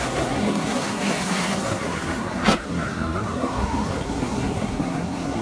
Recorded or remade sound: remade